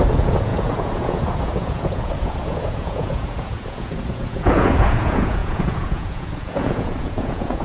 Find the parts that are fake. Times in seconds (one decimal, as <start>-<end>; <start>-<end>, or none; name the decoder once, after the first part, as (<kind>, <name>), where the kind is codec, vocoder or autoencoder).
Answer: 0.0-7.6 (vocoder, Vocos)